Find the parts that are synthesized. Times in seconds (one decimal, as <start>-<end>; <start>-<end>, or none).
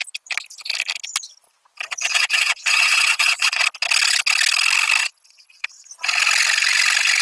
2.1-3.6; 5.0-5.9